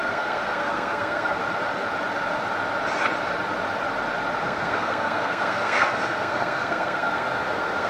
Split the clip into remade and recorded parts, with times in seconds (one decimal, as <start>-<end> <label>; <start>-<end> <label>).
0.0-1.4 remade; 1.4-4.4 recorded; 4.4-7.9 remade

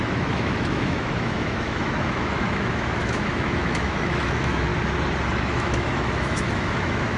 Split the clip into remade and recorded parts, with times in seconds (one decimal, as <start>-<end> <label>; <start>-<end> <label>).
0.0-4.7 remade; 4.7-5.5 recorded; 5.5-7.2 remade